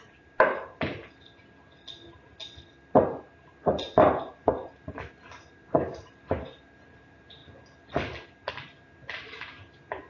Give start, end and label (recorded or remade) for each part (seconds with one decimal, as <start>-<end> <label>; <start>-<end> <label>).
0.0-0.9 remade; 0.9-4.2 recorded; 4.2-7.4 remade; 7.4-8.5 recorded; 8.5-10.1 remade